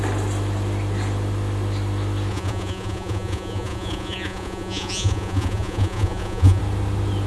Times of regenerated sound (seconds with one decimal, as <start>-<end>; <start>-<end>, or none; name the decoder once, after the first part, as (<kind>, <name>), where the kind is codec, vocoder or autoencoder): 2.3-6.6 (vocoder, Vocos)